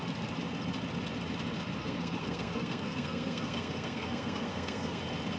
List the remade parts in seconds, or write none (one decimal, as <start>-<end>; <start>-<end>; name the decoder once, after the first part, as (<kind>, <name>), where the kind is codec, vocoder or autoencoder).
1.8-5.0 (codec, SNAC)